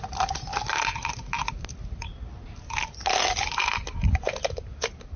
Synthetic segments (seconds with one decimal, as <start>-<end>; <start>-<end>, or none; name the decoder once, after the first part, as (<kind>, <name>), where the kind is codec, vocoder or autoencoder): none